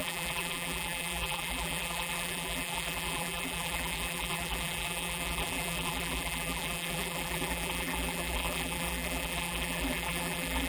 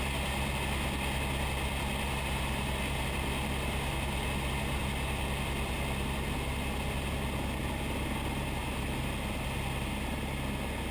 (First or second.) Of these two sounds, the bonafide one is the second